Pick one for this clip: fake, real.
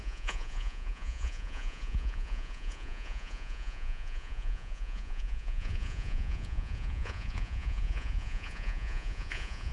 fake